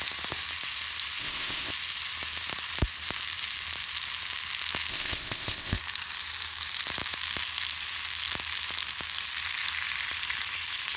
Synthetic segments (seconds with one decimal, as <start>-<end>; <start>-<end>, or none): 1.2-1.7; 4.9-5.8